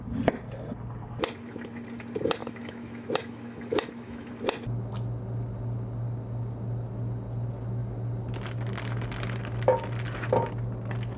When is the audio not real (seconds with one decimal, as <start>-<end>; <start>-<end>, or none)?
2.4-4.3